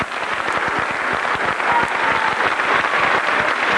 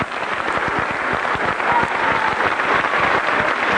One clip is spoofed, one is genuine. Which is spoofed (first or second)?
second